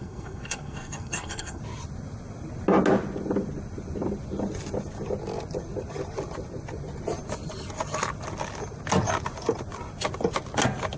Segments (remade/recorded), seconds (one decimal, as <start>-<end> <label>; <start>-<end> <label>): 0.0-1.6 remade; 1.6-11.0 recorded